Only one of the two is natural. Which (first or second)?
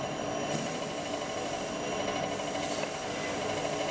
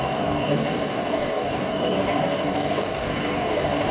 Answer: first